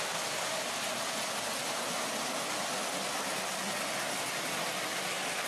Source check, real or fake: real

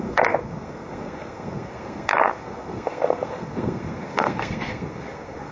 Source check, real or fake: fake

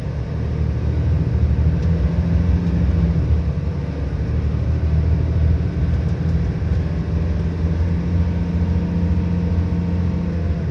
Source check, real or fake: real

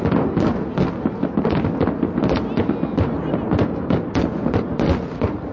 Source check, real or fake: real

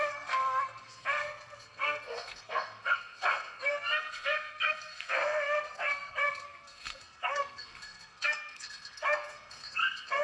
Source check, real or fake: fake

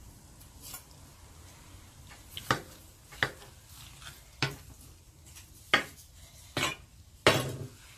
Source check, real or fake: real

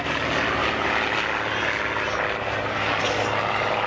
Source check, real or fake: real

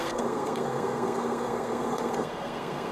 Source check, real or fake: fake